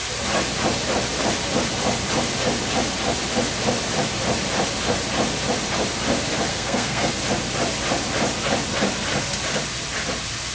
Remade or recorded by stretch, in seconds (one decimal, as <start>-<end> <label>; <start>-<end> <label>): 0.0-6.5 recorded; 6.5-7.1 remade; 7.1-10.5 recorded